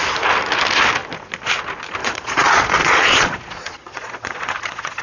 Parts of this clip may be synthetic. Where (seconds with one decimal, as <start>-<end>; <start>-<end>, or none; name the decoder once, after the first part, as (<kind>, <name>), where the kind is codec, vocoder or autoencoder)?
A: 2.0-5.0 (vocoder, Vocos)